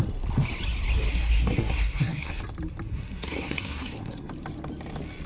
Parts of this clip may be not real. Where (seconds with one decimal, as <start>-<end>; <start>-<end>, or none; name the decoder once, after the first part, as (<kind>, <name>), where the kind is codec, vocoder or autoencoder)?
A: 1.1-2.4 (codec, SNAC); 2.9-4.3